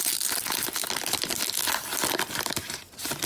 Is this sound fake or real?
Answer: fake